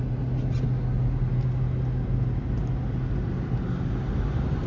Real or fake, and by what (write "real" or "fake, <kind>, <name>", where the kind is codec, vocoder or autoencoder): real